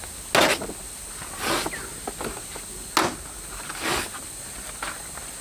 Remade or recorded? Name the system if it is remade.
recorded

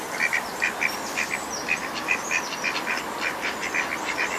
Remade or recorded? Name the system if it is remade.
recorded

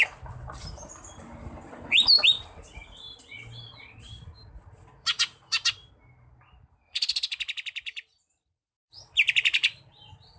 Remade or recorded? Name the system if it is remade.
remade, vocoder, BigVGAN v2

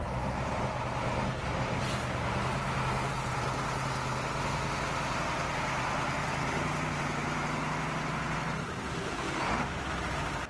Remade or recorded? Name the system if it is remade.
recorded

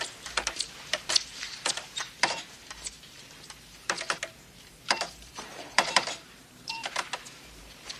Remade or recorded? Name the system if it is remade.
remade, vocoder, BigVGAN v2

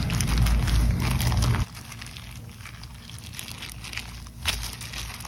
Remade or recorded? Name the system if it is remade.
recorded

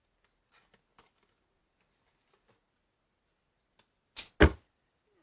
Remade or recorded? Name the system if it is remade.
recorded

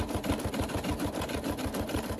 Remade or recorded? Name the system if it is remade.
remade, vocoder, BigVGAN v2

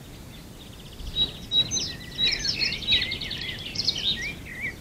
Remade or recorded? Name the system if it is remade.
recorded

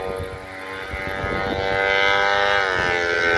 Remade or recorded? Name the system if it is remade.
recorded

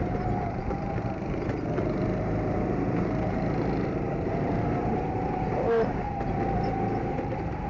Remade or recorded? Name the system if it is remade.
remade, vocoder, BigVGAN v2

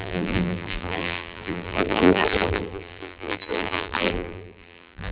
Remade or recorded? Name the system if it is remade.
remade, vocoder, BigVGAN v2